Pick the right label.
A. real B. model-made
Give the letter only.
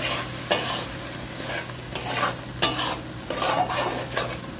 A